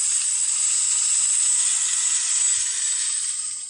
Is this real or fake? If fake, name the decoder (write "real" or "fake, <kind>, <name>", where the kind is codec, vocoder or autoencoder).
fake, vocoder, BigVGAN v2